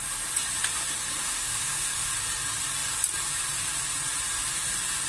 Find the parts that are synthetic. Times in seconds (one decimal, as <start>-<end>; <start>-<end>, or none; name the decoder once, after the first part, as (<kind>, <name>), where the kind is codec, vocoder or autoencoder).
1.2-2.1 (autoencoder, DAC-VAE)